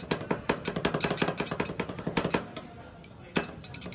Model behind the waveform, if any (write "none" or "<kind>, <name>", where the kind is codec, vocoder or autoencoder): none